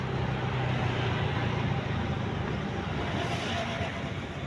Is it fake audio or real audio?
real